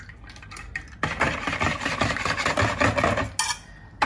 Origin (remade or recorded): recorded